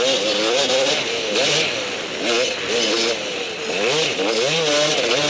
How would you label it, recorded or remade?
recorded